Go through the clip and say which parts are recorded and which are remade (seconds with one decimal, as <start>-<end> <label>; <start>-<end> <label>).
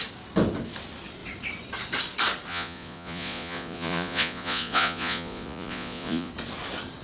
0.0-2.5 recorded; 2.5-6.3 remade; 6.3-7.0 recorded